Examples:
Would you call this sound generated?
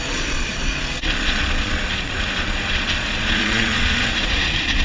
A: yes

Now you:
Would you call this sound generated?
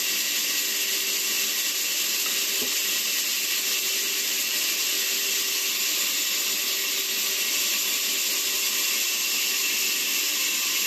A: no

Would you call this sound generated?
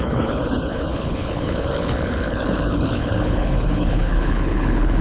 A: yes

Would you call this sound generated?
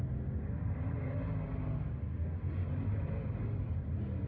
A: no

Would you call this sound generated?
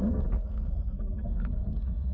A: yes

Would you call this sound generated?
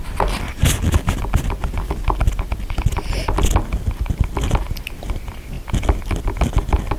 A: no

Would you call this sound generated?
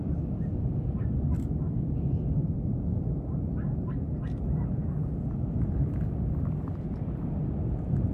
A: no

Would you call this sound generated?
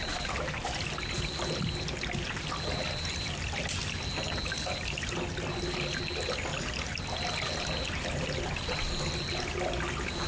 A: no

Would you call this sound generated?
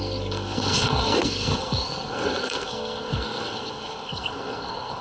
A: yes